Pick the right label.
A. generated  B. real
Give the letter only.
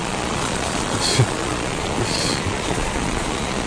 A